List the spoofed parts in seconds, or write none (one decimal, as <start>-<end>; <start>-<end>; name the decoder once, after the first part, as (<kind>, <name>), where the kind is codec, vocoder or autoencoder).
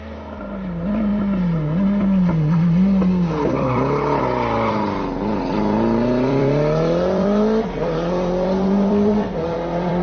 0.0-1.1 (vocoder, BigVGAN v2); 4.7-10.0